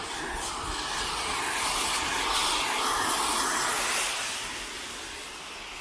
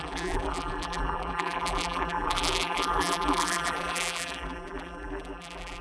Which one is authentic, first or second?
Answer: first